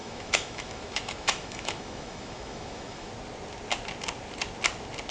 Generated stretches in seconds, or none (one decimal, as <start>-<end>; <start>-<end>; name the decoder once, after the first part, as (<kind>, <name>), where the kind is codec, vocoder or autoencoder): 0.0-3.1 (autoencoder, DAC-VAE)